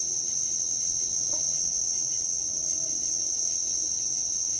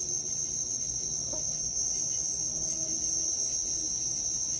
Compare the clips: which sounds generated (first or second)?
first